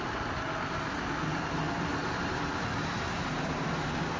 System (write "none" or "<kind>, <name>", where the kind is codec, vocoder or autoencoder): none